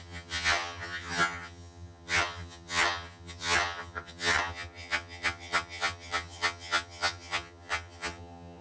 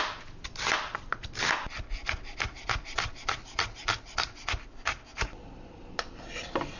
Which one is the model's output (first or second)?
first